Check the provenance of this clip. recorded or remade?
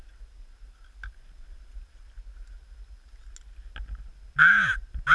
recorded